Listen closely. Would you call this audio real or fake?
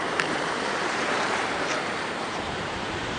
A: fake